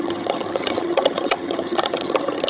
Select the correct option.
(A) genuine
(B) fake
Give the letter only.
B